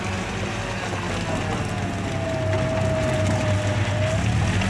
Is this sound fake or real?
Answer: real